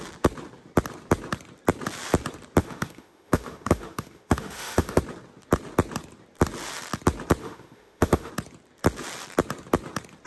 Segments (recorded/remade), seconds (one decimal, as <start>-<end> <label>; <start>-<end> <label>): 0.0-2.6 recorded; 2.6-5.0 remade; 5.0-7.4 recorded; 7.4-8.3 remade; 8.3-10.3 recorded